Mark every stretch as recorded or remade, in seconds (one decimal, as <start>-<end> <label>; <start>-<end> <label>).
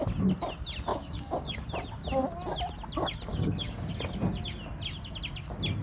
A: 0.0-0.9 recorded; 0.9-1.7 remade; 1.7-3.3 recorded; 3.3-3.9 remade; 3.9-5.8 recorded